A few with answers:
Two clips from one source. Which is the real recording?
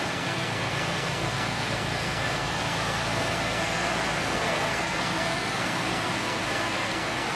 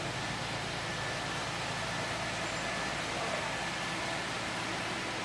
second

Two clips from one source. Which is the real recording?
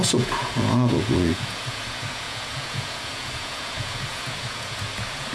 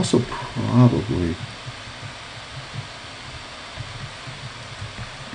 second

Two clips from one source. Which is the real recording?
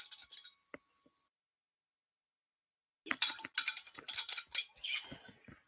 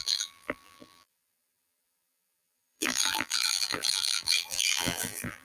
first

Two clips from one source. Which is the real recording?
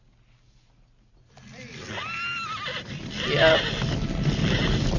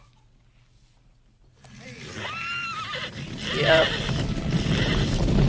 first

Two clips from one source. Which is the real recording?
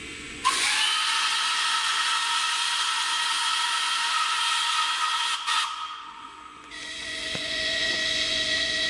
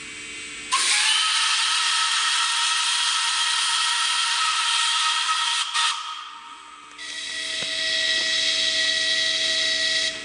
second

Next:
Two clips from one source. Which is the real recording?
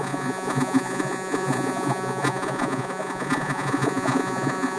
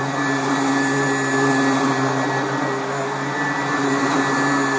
second